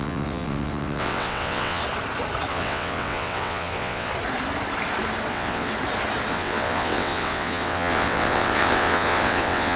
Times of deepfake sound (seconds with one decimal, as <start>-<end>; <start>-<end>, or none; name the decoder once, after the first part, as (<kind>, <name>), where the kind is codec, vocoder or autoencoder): 0.0-1.8 (vocoder, WaveNeXt); 2.5-4.1; 5.3-5.7; 6.3-9.8